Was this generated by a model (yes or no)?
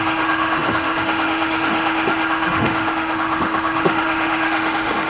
yes